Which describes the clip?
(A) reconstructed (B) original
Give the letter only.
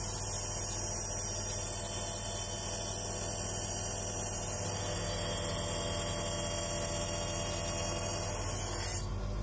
B